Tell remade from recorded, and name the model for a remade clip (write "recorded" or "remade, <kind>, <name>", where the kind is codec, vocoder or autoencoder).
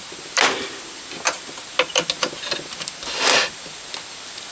recorded